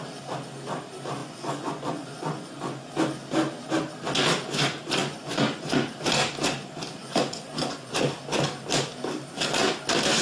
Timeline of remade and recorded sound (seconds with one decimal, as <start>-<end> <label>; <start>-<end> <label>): 0.0-1.2 recorded; 1.2-2.8 remade; 2.8-5.0 recorded; 5.0-5.6 remade; 5.6-7.0 recorded; 7.0-7.9 remade; 7.9-10.2 recorded